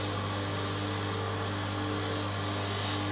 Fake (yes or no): no